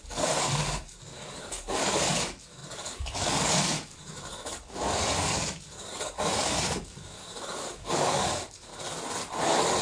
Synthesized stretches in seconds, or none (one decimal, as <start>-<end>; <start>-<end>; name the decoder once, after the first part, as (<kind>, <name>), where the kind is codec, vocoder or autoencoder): 0.0-8.7 (codec, DAC)